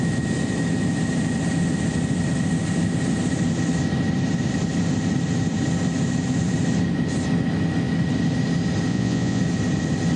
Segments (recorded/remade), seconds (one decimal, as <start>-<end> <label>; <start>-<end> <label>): 0.0-8.9 recorded; 8.9-9.4 remade; 9.4-10.2 recorded